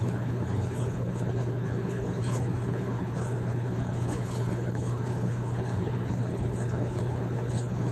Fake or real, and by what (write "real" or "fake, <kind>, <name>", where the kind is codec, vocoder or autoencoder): fake, codec, HILCodec